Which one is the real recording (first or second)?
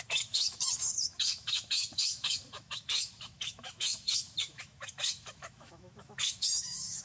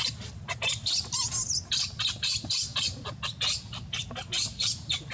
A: second